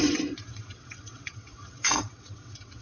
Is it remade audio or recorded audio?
remade